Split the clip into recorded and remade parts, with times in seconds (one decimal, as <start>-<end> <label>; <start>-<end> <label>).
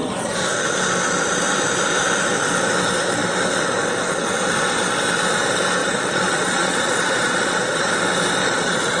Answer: 0.0-5.8 recorded; 5.8-7.9 remade; 7.9-8.4 recorded; 8.4-9.0 remade